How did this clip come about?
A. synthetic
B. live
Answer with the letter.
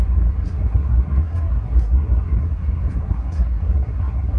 A